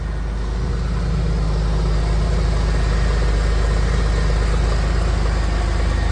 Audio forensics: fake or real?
real